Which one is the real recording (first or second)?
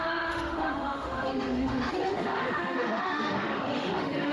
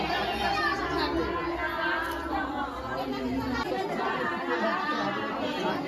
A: second